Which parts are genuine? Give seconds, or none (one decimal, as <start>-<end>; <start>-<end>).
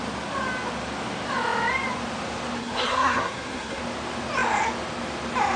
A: 0.0-2.6; 3.8-5.6